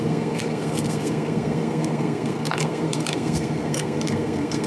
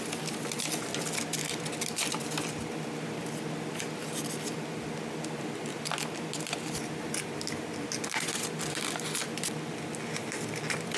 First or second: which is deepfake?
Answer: first